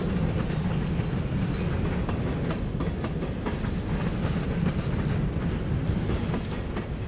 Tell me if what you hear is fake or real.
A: real